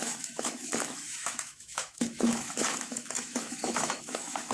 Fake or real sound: fake